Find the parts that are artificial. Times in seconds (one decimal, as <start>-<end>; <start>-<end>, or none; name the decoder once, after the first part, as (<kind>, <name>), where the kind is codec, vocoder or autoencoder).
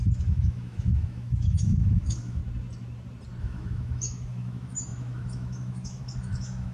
0.0-2.4 (autoencoder, DAC-VAE); 3.4-6.7